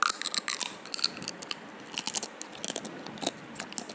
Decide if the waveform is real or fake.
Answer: real